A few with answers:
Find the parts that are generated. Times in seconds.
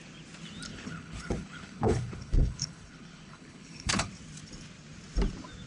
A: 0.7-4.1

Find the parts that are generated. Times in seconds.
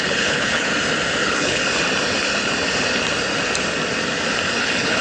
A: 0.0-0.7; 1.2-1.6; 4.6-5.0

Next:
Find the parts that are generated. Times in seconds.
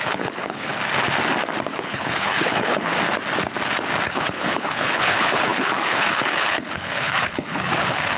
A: 0.0-0.7; 1.7-2.9; 4.1-8.2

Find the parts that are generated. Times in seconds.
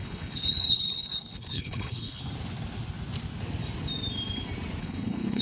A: 0.0-2.2; 4.8-5.4